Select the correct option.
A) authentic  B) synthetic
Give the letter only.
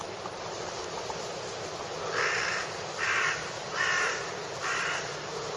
A